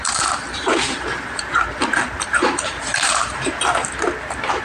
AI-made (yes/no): yes